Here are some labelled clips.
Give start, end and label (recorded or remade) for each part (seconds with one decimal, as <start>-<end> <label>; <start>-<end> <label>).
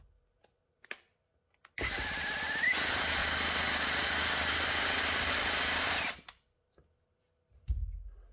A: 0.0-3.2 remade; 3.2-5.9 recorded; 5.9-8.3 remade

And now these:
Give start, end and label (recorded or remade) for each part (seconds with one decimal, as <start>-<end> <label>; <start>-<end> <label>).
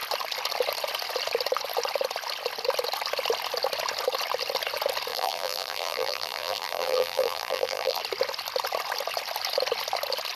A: 0.0-5.1 recorded; 5.1-8.0 remade; 8.0-10.4 recorded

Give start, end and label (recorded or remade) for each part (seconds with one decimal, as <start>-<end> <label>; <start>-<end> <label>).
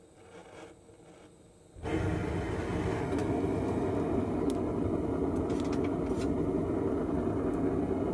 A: 0.0-8.1 recorded